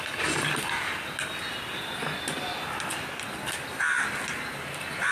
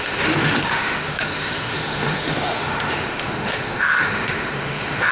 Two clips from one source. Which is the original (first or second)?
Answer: first